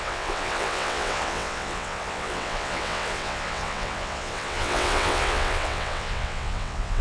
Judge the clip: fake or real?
fake